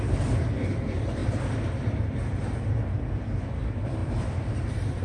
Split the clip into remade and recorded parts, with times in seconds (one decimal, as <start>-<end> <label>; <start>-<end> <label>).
0.0-5.0 remade